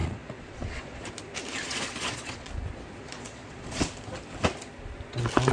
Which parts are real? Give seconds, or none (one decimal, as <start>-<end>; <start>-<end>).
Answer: 1.1-1.6; 2.5-3.0; 3.8-5.5